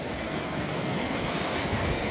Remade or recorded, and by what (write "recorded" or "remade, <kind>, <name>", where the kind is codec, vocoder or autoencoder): remade, codec, SNAC